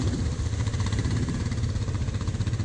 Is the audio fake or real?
fake